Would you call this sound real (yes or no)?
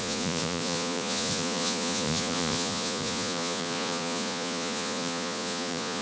no